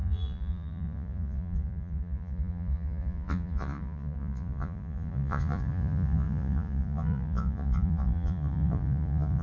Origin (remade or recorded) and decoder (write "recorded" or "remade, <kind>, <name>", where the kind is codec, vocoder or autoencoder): remade, vocoder, Vocos